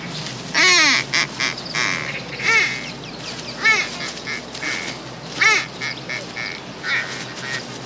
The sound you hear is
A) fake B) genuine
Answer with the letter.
B